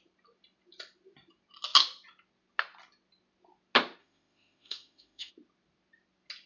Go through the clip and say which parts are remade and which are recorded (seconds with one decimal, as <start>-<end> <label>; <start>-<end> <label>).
0.0-4.0 recorded; 4.0-5.3 remade; 5.3-6.5 recorded